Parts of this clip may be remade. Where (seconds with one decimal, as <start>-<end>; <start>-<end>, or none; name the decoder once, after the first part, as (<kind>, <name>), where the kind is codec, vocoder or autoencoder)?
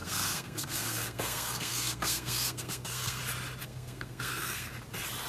0.0-3.2 (codec, SNAC); 3.6-4.7